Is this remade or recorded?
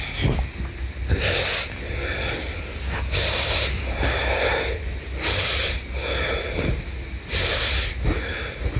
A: recorded